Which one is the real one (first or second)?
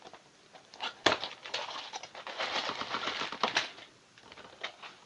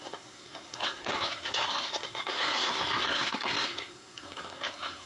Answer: first